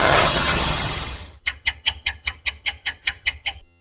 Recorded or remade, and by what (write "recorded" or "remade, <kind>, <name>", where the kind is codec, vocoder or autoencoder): remade, vocoder, HiFi-GAN